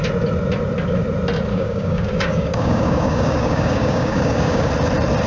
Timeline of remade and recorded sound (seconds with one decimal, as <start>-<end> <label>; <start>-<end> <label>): 0.0-1.5 recorded; 1.5-4.7 remade; 4.7-5.3 recorded